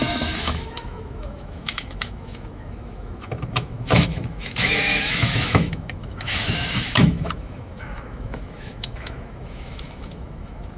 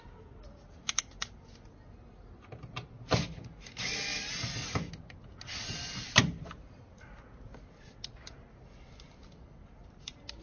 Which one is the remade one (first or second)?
first